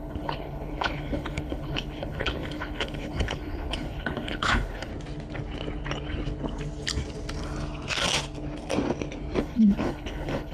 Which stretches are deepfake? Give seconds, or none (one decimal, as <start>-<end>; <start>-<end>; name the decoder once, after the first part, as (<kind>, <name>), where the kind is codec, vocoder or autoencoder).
0.0-4.9 (codec, HILCodec); 9.4-10.5